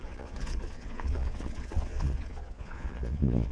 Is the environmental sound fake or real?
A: fake